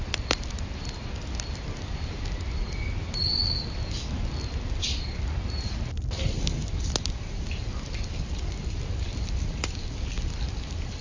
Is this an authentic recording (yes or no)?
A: yes